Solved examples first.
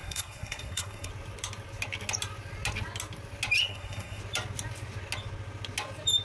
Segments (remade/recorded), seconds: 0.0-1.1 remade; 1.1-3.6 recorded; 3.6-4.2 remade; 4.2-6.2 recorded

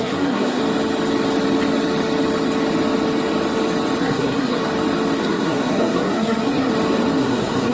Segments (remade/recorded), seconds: 0.0-0.6 remade; 0.6-4.0 recorded; 4.0-4.6 remade; 4.6-5.2 recorded; 5.2-6.7 remade; 6.7-7.2 recorded; 7.2-7.7 remade

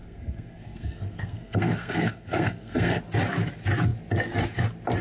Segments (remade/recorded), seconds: 0.0-3.0 remade; 3.0-5.0 recorded

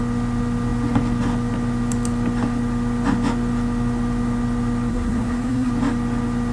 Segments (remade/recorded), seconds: 0.0-4.9 recorded; 4.9-5.7 remade; 5.7-6.5 recorded